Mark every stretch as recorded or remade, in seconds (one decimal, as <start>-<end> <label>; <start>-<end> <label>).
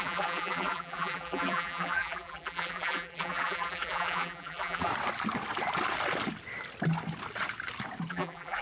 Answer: 0.0-4.9 remade; 4.9-8.1 recorded; 8.1-8.6 remade